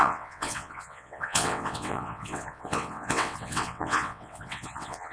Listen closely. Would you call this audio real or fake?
fake